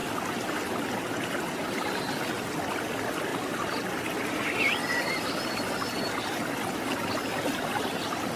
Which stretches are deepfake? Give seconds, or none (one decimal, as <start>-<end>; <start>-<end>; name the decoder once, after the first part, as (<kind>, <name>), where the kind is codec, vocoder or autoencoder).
none